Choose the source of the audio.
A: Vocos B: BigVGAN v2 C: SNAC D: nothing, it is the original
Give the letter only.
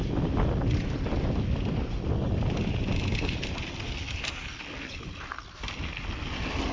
D